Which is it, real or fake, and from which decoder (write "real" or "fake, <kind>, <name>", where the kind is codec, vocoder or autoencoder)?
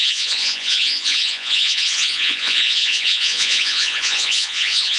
fake, vocoder, Vocos